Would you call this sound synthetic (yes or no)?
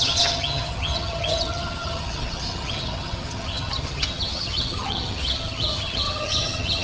yes